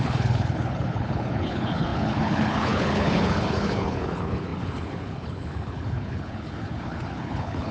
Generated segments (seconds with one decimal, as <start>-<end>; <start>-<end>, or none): 0.0-7.7